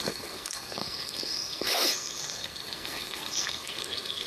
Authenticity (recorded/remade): remade